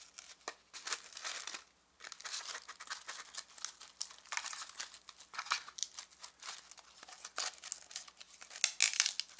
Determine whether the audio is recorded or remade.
recorded